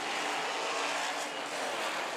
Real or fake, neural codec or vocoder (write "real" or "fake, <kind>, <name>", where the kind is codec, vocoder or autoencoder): real